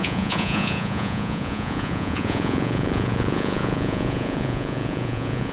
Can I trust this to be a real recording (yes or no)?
no